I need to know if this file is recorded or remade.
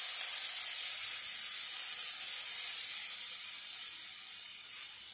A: recorded